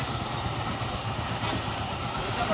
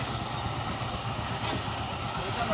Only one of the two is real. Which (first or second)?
second